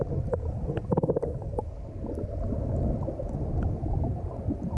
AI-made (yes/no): no